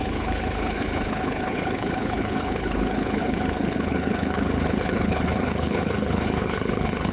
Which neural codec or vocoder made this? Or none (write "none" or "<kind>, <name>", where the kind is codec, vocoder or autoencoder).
codec, HILCodec